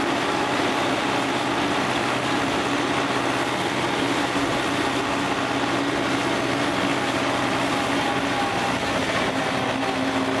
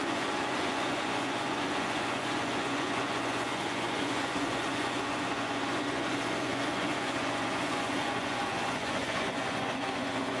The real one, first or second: first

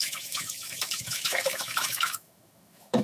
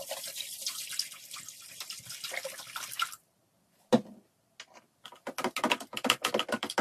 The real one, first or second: second